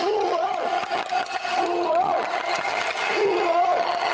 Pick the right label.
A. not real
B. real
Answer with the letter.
A